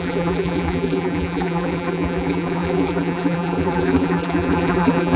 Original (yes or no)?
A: no